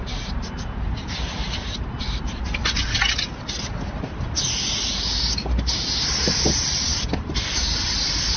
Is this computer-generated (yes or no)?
no